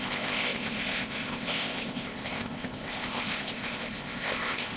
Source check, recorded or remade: remade